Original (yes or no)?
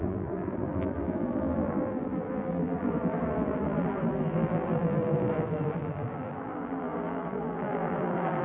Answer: no